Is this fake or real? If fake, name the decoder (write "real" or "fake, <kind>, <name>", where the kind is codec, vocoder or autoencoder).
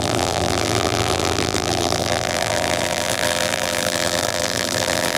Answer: fake, vocoder, BigVGAN v2